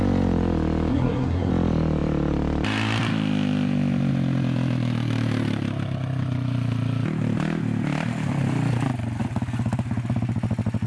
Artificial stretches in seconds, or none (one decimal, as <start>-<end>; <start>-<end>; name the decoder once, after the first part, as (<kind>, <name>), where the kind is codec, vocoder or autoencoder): 0.9-1.5 (codec, SNAC)